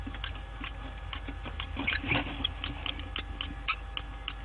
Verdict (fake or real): real